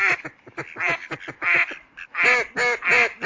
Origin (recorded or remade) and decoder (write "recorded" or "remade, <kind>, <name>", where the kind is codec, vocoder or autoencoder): recorded